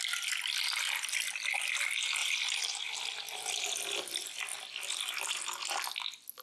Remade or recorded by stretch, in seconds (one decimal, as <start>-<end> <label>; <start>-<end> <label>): 0.0-2.2 recorded; 2.2-3.3 remade; 3.3-4.5 recorded; 4.5-5.2 remade; 5.2-6.4 recorded